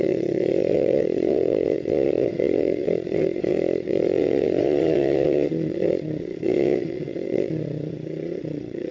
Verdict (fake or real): fake